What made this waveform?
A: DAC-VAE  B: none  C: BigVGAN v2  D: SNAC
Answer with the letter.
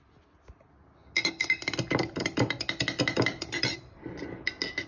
B